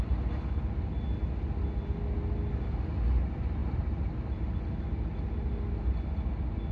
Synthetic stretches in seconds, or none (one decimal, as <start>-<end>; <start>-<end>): 3.6-4.4